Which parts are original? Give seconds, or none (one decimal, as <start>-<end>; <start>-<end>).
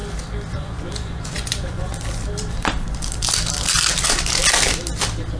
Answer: 0.0-0.5; 1.9-5.4